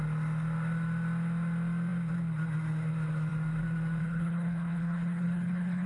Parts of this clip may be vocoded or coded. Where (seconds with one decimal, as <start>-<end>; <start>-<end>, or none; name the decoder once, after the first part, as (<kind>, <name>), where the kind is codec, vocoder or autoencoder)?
4.0-5.9 (codec, HILCodec)